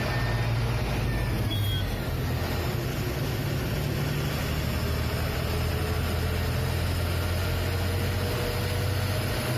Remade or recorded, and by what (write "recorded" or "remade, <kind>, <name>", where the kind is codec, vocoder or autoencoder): recorded